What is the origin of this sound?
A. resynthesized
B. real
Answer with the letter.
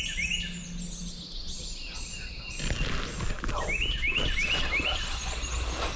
B